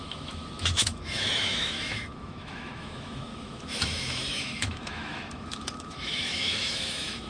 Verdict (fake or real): fake